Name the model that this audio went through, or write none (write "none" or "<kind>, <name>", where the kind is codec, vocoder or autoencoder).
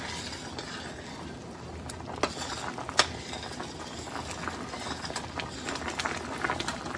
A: none